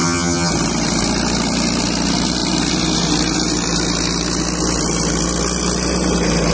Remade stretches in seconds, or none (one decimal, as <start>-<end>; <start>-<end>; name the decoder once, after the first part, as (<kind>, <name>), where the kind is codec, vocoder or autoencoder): 0.0-0.5 (vocoder, HiFi-GAN)